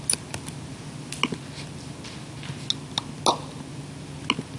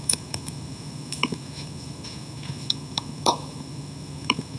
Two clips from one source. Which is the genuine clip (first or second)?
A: first